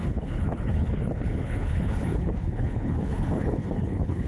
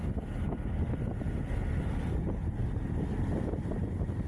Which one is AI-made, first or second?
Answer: first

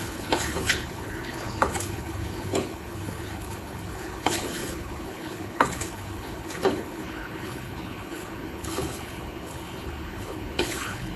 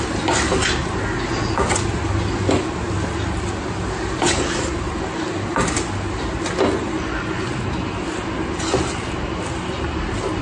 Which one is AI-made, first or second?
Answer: first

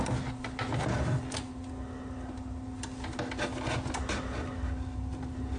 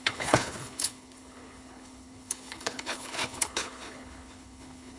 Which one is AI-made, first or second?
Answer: second